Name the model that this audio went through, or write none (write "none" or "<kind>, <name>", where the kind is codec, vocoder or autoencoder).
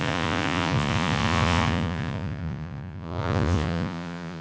vocoder, Vocos